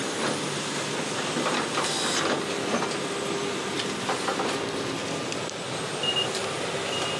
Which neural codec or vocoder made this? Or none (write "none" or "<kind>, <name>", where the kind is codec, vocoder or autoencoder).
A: none